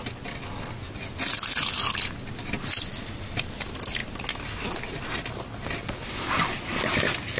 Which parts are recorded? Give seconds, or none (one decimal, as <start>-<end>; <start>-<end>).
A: 0.0-7.4